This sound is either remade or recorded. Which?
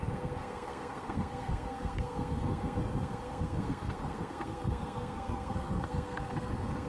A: remade